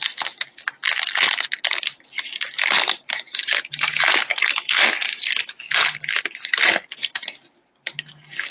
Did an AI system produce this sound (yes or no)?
no